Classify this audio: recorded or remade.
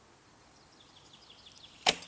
recorded